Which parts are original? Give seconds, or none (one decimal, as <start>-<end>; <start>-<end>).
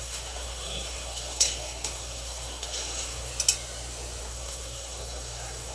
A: 3.3-4.2